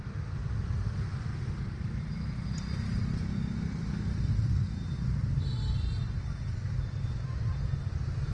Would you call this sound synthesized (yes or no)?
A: no